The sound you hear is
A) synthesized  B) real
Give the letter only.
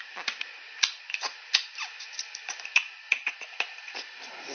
A